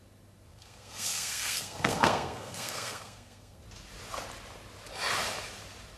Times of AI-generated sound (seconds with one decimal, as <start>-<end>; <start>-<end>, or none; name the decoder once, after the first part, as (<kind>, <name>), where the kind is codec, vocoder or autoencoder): 0.5-3.6 (codec, SNAC)